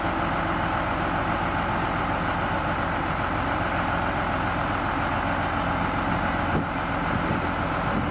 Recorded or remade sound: recorded